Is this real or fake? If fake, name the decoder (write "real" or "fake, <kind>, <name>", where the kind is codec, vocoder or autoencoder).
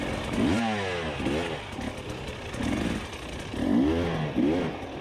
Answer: real